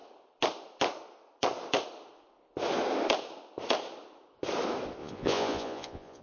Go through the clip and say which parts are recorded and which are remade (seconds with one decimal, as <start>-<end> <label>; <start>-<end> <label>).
0.0-5.0 recorded; 5.0-6.2 remade